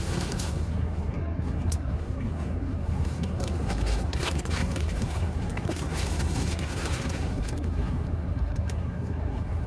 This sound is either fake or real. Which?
fake